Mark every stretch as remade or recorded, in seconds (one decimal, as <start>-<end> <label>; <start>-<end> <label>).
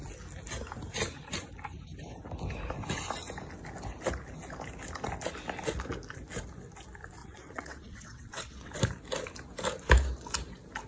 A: 0.0-7.2 recorded; 7.2-8.7 remade; 8.7-10.9 recorded